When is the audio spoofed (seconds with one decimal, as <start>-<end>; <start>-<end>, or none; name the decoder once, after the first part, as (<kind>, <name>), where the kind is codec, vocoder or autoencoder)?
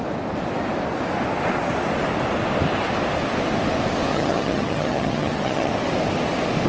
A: 4.1-5.7 (vocoder, HiFi-GAN)